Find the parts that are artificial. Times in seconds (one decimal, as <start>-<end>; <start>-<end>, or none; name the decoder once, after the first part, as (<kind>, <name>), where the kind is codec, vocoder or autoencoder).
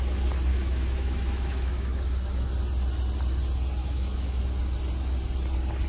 0.5-2.5 (autoencoder, DAC-VAE); 3.8-4.4